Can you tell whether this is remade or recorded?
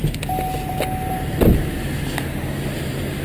recorded